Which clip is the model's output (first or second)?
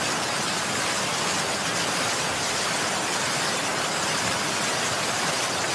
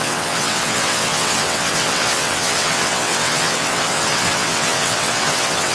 second